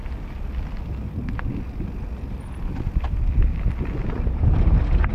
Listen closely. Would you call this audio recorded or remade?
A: recorded